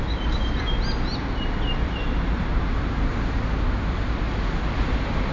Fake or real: real